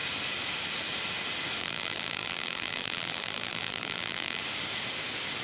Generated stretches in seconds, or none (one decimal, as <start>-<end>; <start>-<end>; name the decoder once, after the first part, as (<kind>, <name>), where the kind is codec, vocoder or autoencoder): 1.6-4.4 (vocoder, BigVGAN v2)